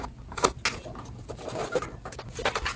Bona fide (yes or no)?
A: yes